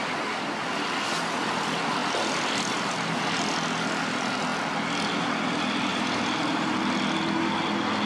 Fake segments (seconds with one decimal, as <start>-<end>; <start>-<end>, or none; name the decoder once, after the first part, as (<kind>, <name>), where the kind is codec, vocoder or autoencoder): 5.9-6.8 (vocoder, BigVGAN v2)